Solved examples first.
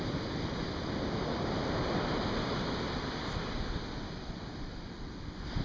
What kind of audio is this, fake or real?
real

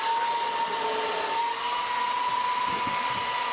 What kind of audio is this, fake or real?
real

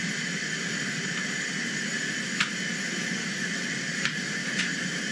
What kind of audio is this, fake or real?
real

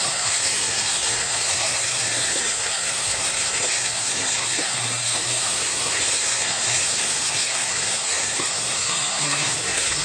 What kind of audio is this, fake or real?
fake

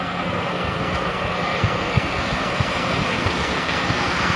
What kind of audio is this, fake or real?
fake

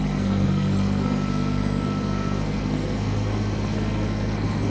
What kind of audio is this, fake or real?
fake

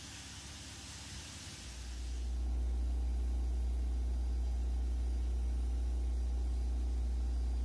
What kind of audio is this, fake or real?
real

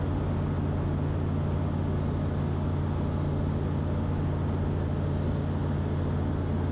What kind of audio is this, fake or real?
real